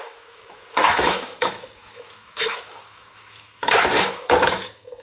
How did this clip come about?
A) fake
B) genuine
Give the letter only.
A